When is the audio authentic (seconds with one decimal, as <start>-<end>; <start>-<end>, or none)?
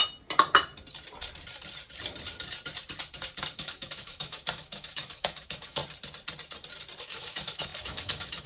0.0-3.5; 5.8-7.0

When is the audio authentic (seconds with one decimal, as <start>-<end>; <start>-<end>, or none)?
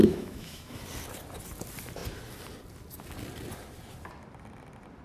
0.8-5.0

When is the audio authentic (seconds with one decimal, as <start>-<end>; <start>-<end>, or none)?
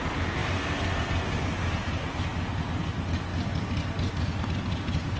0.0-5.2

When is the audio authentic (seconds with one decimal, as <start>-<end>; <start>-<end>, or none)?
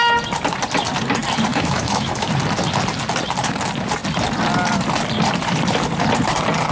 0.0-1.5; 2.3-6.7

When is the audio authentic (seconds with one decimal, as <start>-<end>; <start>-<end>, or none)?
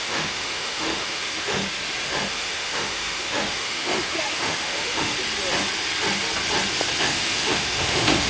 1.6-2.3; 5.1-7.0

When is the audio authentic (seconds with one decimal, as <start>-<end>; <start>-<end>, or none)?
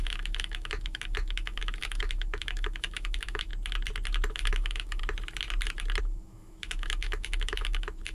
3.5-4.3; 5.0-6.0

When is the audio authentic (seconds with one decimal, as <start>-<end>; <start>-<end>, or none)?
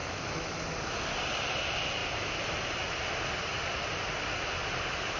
0.6-5.2